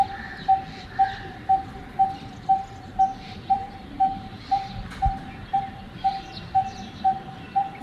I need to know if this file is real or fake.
real